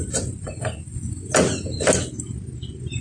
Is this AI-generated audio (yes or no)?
no